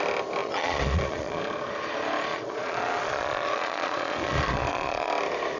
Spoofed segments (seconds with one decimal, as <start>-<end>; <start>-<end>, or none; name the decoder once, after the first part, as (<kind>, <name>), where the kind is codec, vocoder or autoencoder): 0.4-1.4 (vocoder, Vocos); 2.3-5.1